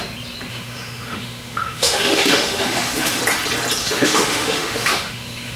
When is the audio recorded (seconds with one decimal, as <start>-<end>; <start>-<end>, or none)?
0.0-0.5; 3.2-3.8